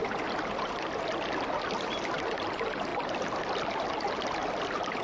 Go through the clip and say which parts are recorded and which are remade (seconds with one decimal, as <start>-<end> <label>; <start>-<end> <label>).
0.0-5.0 recorded